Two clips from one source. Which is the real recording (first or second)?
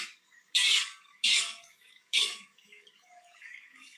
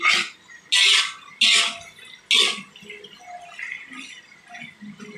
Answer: second